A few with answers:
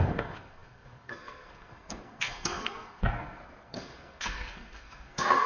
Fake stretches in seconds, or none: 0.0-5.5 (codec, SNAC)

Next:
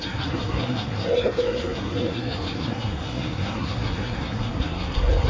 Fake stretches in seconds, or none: 0.0-5.3 (codec, SNAC)

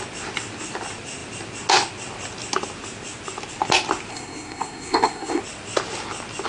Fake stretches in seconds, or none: 4.1-5.4 (codec, SNAC)